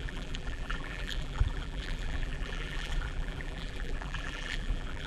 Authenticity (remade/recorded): remade